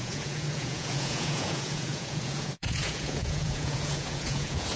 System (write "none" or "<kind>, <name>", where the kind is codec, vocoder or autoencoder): vocoder, Vocos